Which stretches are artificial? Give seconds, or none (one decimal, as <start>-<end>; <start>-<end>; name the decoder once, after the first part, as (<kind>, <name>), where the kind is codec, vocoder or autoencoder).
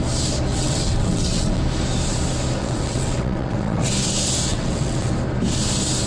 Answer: 0.5-1.6 (vocoder, WaveNeXt); 2.6-3.9; 4.5-5.1